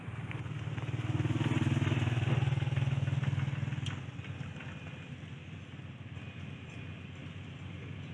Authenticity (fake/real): real